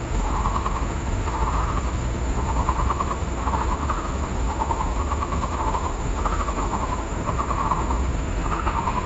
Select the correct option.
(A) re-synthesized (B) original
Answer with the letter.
A